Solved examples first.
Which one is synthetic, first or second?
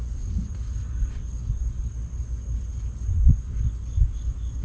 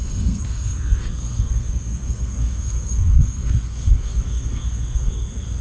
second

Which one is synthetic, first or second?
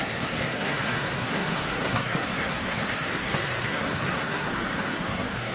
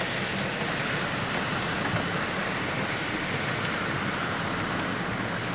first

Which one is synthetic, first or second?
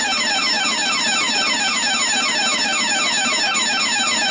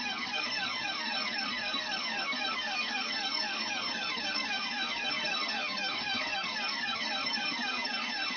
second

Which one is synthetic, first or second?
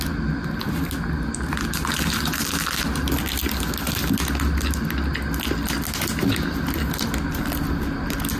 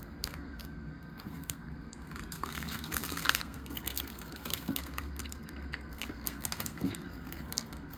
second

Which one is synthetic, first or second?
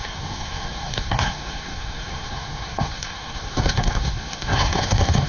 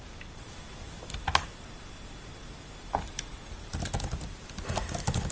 first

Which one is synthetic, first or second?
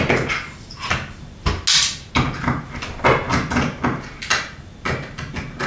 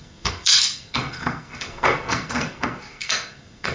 second